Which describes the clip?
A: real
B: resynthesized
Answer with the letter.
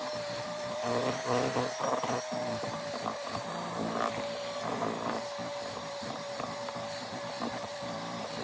B